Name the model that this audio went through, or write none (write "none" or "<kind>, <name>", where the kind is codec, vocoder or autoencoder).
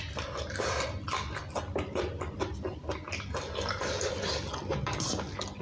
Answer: none